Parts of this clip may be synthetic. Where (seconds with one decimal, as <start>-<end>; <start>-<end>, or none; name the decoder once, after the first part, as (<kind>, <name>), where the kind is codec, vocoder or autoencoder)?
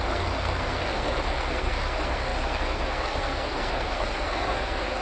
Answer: 0.0-5.0 (codec, SNAC)